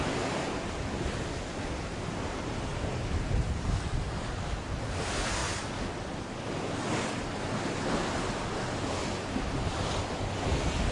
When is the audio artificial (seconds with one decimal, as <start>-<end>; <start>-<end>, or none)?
none